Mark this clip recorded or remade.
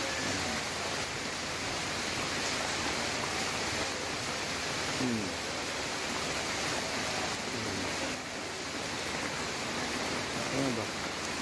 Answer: recorded